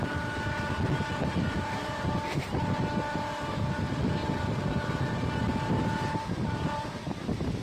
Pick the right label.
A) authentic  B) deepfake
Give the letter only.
A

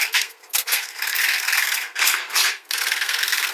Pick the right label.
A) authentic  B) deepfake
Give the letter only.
B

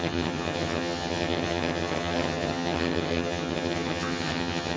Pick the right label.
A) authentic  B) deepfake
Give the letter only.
B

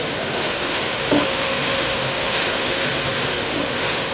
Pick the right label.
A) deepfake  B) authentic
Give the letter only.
A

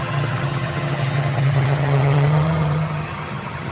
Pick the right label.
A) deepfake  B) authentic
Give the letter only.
A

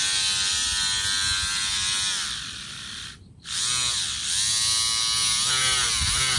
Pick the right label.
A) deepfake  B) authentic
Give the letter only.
B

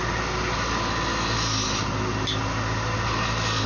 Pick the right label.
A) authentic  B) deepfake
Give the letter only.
A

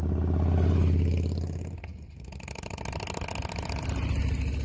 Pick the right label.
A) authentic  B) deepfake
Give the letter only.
A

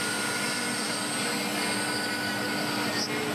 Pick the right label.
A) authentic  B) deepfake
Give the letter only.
A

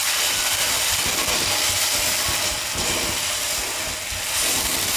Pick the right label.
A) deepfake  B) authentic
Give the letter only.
B